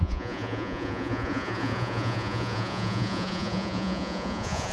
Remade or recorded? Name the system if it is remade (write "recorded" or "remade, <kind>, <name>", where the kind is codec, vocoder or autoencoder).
remade, vocoder, Vocos